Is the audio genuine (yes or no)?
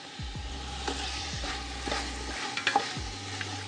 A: yes